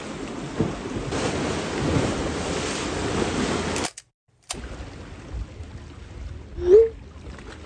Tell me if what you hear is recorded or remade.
recorded